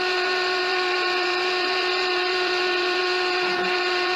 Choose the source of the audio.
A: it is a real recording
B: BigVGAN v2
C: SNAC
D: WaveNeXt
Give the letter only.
B